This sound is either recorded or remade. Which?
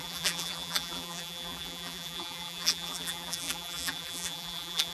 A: remade